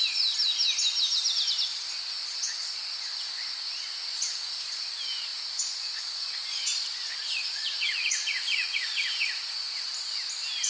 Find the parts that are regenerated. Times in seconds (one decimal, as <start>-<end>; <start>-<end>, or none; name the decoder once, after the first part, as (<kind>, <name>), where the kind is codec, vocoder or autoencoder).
5.3-9.8 (vocoder, Vocos)